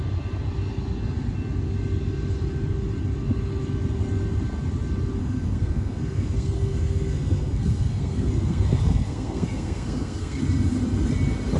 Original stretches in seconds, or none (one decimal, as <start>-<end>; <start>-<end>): 0.0-5.2; 10.4-11.6